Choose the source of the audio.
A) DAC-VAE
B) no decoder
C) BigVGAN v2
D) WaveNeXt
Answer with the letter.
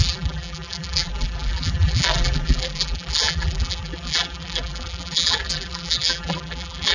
C